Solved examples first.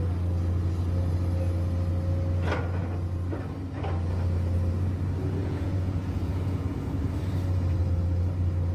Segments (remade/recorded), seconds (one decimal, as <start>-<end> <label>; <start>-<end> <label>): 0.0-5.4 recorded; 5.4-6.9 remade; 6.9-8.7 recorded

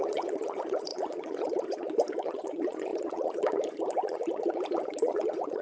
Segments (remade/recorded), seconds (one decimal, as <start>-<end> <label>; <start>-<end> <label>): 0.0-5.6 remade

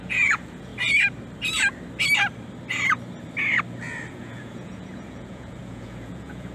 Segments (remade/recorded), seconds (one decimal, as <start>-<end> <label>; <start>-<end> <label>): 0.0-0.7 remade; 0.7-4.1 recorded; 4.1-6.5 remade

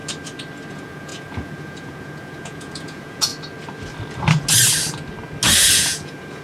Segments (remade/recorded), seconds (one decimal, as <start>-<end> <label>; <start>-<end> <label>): 0.0-0.7 recorded; 0.7-3.3 remade; 3.3-5.7 recorded; 5.7-6.4 remade